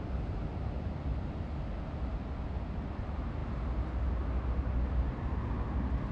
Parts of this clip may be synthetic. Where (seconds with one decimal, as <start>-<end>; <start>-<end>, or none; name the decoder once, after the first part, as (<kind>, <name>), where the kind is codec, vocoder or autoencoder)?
none